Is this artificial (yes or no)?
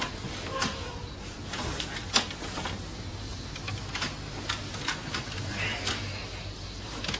no